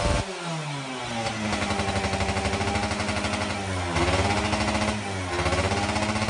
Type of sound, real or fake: real